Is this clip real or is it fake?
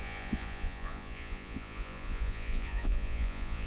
fake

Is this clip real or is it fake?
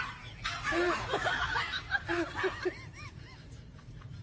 real